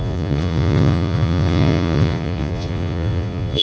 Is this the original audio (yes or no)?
no